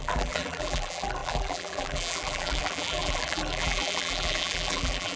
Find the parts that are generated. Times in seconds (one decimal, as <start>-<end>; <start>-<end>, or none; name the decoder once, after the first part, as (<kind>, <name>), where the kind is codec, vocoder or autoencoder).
0.0-5.2 (vocoder, BigVGAN v2)